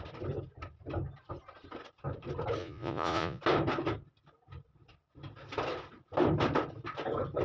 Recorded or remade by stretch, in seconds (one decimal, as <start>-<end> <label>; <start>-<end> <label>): 0.0-2.6 recorded; 2.6-3.4 remade; 3.4-7.4 recorded